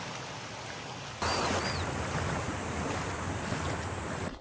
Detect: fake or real real